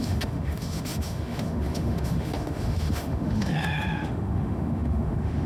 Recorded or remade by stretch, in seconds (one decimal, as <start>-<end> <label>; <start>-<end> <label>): 0.0-5.5 remade